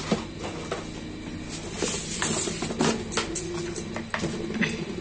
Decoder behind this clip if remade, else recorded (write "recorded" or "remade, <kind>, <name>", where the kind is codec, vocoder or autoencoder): recorded